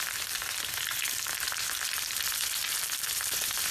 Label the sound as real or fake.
fake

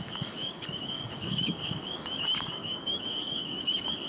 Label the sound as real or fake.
fake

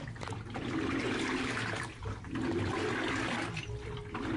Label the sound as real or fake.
real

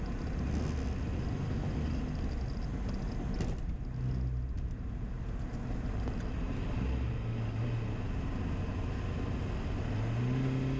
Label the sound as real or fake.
real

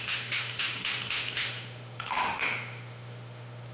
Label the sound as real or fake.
fake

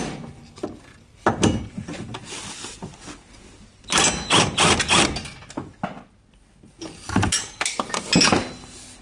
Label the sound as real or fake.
real